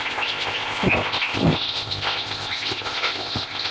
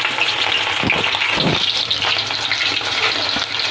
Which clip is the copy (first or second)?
first